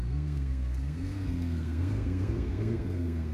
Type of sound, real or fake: fake